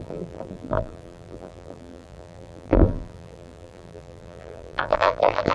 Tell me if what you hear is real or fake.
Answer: fake